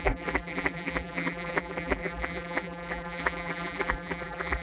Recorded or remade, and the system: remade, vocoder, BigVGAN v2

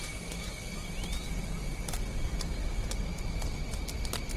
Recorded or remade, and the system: recorded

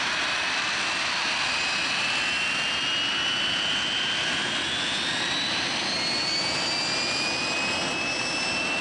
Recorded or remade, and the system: recorded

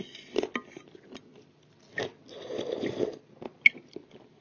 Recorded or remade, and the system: recorded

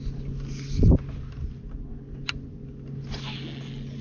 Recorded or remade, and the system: recorded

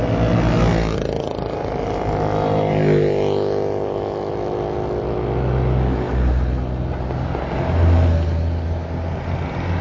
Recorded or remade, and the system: recorded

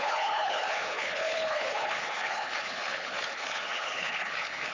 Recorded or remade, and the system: remade, codec, HILCodec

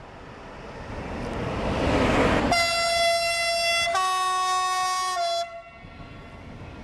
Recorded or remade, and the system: recorded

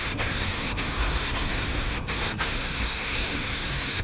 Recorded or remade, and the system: remade, codec, SNAC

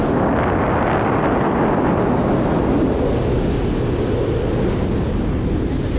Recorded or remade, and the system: recorded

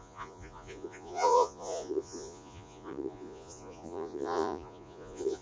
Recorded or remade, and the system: remade, vocoder, Vocos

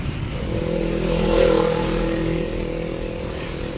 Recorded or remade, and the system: remade, codec, DAC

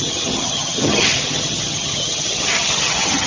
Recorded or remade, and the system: remade, vocoder, HiFi-GAN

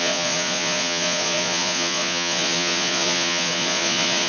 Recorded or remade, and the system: remade, vocoder, Vocos